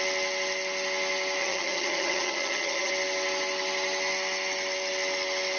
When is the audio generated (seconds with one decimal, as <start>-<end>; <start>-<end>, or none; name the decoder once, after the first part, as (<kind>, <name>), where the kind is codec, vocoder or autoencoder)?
1.4-2.9 (vocoder, HiFi-GAN)